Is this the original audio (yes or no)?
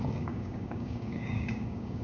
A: no